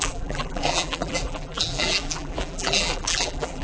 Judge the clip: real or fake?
fake